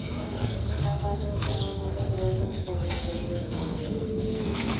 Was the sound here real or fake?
fake